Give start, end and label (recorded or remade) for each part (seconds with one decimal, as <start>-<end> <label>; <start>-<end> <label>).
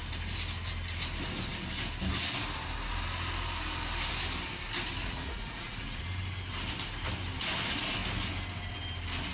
0.0-5.0 recorded; 5.0-6.0 remade; 6.0-9.3 recorded